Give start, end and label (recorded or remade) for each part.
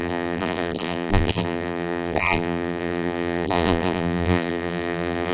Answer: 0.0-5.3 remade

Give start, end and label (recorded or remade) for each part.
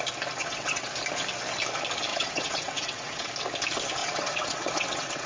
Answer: 0.0-0.4 recorded; 0.4-0.9 remade; 0.9-2.1 recorded; 2.1-3.3 remade; 3.3-4.0 recorded; 4.0-5.3 remade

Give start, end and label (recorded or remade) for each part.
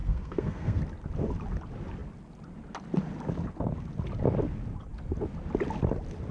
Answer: 0.0-0.8 remade; 0.8-6.3 recorded